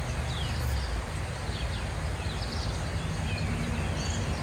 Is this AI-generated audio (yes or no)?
no